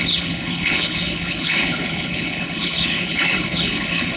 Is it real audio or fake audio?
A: fake